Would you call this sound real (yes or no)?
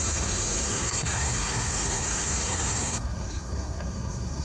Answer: no